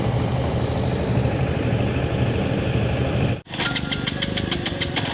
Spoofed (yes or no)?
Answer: no